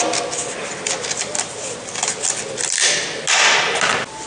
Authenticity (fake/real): real